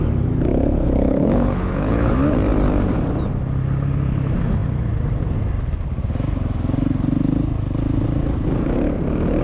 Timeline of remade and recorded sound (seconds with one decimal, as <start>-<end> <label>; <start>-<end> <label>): 0.0-0.5 recorded; 0.5-2.1 remade; 2.1-9.4 recorded